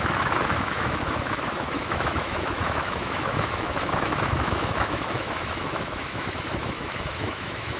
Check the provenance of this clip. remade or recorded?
remade